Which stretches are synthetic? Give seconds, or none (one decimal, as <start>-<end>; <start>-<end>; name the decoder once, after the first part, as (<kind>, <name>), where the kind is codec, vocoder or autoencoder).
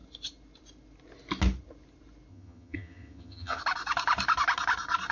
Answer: 2.3-3.6 (vocoder, HiFi-GAN)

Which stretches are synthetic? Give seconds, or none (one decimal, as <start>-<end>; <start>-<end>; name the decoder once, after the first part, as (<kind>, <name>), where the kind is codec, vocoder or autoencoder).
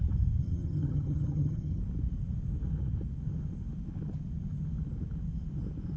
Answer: 0.4-1.8 (vocoder, HiFi-GAN)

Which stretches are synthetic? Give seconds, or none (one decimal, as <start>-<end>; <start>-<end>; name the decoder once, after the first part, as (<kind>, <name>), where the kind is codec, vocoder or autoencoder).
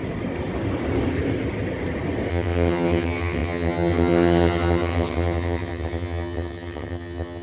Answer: 2.3-7.4 (vocoder, HiFi-GAN)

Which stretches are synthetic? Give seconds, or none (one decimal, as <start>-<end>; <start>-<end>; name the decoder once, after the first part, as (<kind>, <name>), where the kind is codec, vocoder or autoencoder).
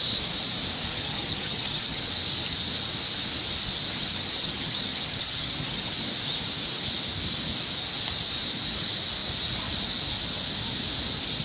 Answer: 0.9-2.1 (vocoder, HiFi-GAN); 4.0-6.0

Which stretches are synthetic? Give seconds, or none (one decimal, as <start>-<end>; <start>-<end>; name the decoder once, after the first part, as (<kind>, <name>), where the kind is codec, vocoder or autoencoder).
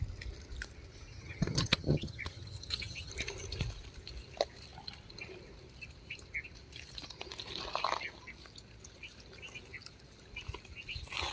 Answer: 1.1-3.1 (vocoder, HiFi-GAN)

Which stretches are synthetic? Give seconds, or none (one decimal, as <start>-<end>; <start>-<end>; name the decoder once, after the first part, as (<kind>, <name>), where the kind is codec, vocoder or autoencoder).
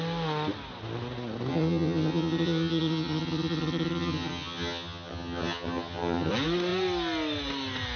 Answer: 1.5-6.3 (vocoder, HiFi-GAN)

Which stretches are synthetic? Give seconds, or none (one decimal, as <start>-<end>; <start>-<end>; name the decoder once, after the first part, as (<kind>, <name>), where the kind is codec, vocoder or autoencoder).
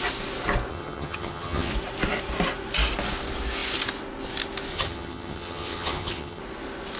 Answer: 0.7-1.7 (vocoder, HiFi-GAN); 4.7-6.4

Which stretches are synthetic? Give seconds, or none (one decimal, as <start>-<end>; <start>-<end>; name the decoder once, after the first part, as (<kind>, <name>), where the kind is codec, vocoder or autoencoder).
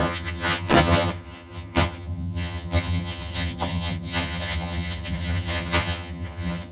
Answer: 0.0-6.7 (vocoder, HiFi-GAN)